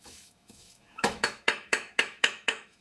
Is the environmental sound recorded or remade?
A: remade